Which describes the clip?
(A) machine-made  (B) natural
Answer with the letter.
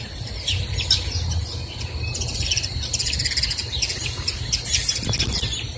B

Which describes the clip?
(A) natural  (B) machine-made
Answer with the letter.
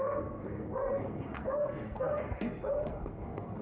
B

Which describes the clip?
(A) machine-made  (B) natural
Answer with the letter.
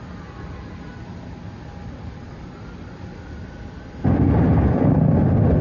B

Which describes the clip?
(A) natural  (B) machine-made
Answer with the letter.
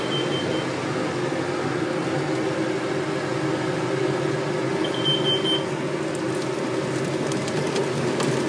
A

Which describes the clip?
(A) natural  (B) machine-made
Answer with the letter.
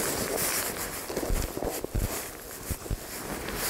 A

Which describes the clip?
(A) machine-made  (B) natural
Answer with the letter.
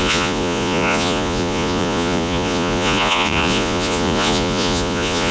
A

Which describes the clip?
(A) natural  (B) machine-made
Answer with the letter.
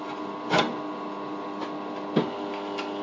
A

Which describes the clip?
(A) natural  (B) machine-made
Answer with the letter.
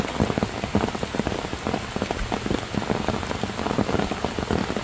A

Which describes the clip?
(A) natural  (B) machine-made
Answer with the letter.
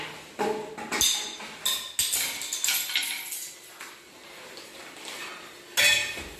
A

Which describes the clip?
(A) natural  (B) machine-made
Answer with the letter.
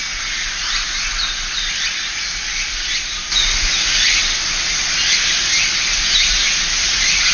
A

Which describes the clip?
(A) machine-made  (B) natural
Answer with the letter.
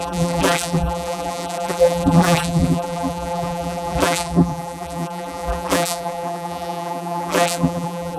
A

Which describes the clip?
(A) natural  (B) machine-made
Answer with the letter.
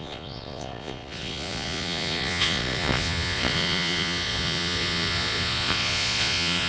B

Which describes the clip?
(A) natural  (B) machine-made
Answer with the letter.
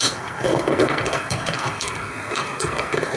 B